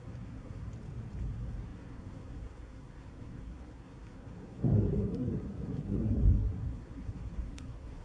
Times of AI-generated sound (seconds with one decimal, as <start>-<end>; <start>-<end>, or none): 0.0-0.7; 1.2-8.0